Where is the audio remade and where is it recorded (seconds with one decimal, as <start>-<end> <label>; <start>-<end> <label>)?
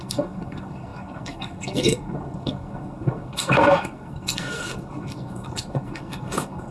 0.0-6.7 remade